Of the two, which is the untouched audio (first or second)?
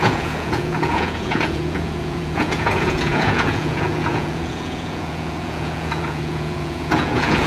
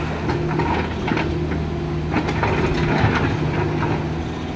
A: second